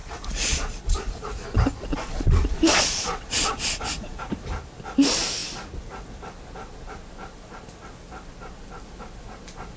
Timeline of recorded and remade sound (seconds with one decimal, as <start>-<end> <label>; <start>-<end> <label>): 0.0-1.1 remade; 1.1-1.9 recorded; 1.9-4.2 remade; 4.2-9.8 recorded